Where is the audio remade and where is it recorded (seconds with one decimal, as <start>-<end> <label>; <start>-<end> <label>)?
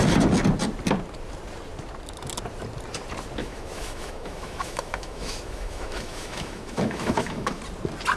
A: 0.0-3.4 recorded; 3.4-7.6 remade; 7.6-8.2 recorded